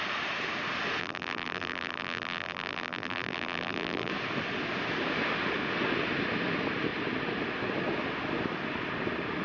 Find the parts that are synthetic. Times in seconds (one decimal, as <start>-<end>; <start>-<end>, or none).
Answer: 1.0-4.1